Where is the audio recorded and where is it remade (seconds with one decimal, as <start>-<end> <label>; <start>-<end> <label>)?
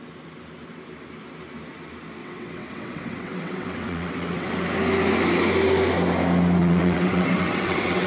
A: 0.0-2.2 recorded; 2.2-4.5 remade; 4.5-6.6 recorded; 6.6-8.1 remade